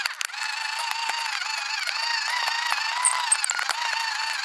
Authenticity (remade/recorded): recorded